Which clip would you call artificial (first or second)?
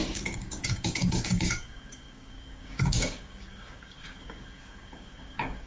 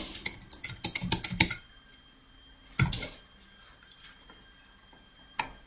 first